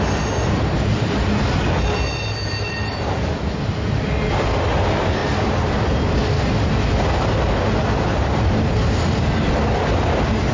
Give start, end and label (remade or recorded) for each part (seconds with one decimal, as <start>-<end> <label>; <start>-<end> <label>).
0.0-10.5 recorded